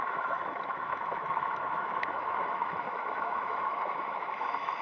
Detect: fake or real fake